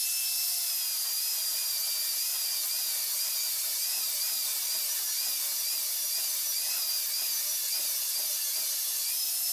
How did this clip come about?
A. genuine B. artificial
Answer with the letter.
A